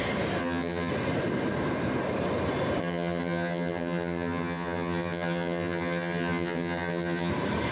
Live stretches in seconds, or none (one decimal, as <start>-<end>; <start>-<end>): 0.0-0.4; 0.9-2.8; 7.3-7.7